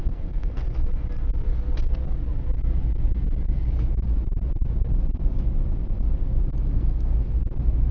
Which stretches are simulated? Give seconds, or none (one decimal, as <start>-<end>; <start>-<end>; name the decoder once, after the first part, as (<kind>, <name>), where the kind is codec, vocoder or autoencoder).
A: 0.0-0.9 (codec, SNAC); 6.7-7.4